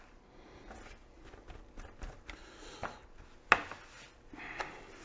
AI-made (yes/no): no